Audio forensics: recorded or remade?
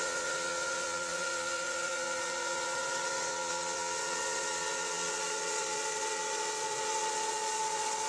remade